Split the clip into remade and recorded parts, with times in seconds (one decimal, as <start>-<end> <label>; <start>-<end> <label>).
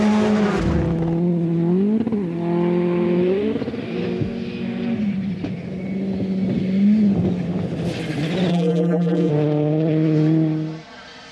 0.0-8.5 recorded; 8.5-9.3 remade; 9.3-11.3 recorded